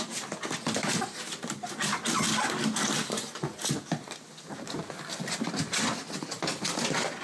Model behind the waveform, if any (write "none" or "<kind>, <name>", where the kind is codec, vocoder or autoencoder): none